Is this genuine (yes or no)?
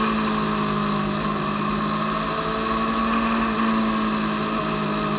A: yes